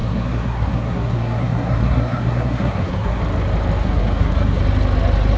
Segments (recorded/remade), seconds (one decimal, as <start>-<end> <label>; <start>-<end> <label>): 0.0-3.2 remade; 3.2-3.8 recorded; 3.8-4.6 remade; 4.6-5.4 recorded